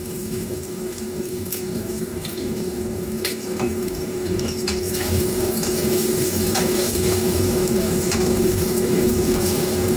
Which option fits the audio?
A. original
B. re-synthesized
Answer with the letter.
B